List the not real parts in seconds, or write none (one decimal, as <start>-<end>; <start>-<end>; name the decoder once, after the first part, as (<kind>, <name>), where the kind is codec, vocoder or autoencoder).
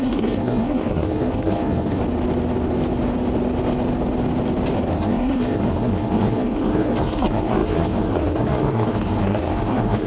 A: 0.0-2.0 (codec, SNAC); 4.9-10.1